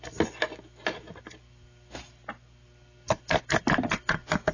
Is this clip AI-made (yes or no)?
no